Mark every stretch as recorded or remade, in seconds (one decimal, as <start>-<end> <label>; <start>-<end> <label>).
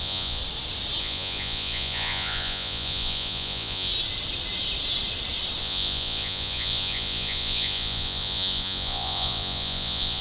0.0-0.4 remade; 0.4-1.0 recorded; 1.0-3.9 remade; 3.9-5.6 recorded; 5.6-10.2 remade